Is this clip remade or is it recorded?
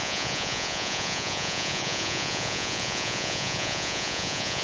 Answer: remade